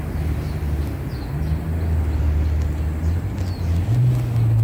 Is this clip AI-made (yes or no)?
no